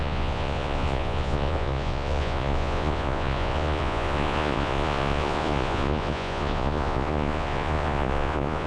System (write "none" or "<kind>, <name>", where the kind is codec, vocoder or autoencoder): vocoder, Vocos